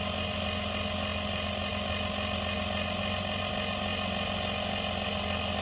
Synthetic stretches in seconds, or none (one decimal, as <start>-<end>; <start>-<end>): none